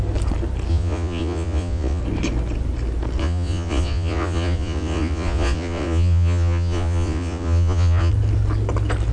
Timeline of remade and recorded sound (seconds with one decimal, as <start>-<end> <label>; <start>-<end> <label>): 0.0-0.7 recorded; 0.7-2.0 remade; 2.0-3.2 recorded; 3.2-8.1 remade; 8.1-9.1 recorded